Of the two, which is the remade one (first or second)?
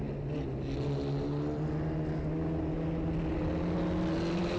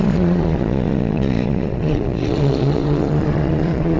second